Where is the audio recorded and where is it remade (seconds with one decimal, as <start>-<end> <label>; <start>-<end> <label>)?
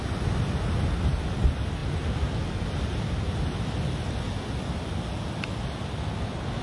0.0-6.6 recorded